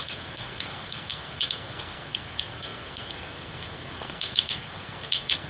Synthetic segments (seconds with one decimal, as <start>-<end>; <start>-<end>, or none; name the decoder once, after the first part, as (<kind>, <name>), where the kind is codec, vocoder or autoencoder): 0.0-5.5 (codec, SNAC)